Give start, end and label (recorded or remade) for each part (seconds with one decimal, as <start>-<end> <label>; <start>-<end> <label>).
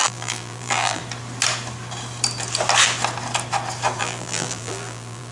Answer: 0.0-1.0 remade; 1.0-4.0 recorded; 4.0-5.3 remade